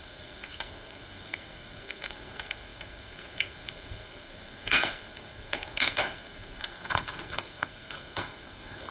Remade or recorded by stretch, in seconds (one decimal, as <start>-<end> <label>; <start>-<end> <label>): 0.0-8.9 remade